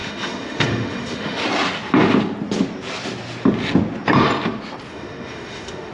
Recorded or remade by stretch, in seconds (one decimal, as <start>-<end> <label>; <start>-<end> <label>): 0.0-1.4 remade; 1.4-4.9 recorded; 4.9-5.9 remade